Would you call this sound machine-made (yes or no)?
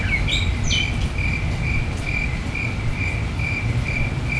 no